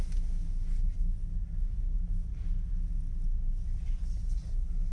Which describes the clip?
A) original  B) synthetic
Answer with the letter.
A